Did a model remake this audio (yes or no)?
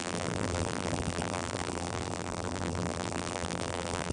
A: yes